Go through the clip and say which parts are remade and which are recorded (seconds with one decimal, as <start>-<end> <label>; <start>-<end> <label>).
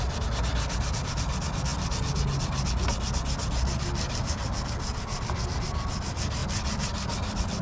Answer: 0.0-7.6 recorded